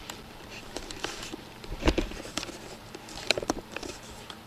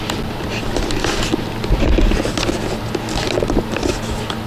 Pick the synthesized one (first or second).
first